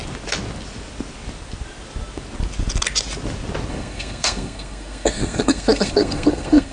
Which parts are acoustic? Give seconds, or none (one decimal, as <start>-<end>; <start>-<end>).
0.0-3.7